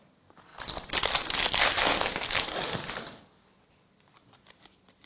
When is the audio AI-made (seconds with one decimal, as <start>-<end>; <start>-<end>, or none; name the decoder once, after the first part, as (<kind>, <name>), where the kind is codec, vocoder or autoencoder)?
none